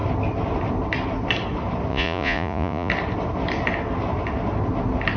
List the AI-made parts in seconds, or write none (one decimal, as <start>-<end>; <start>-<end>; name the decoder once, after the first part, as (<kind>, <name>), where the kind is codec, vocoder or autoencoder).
1.9-2.9 (vocoder, Vocos)

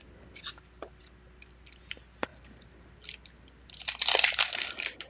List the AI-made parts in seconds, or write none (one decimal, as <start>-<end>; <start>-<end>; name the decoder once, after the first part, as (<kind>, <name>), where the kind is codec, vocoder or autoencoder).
none

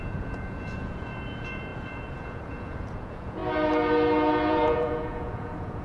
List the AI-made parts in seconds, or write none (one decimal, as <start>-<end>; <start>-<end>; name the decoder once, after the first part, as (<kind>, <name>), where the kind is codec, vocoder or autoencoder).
0.0-3.4 (vocoder, Vocos); 4.5-5.8

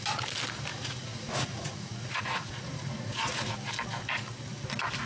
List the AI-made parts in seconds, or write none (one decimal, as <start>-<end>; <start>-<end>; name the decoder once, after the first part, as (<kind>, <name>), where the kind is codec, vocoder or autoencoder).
0.7-3.5 (vocoder, Vocos)